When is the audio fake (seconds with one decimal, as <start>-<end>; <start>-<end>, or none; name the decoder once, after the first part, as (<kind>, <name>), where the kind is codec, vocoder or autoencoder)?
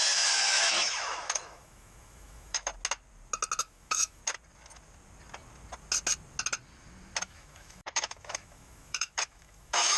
0.0-2.7 (autoencoder, DAC-VAE); 3.6-4.2; 7.2-10.0